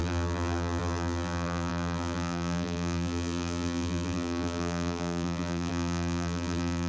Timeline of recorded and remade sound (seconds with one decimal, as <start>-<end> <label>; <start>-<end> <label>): 0.0-6.9 remade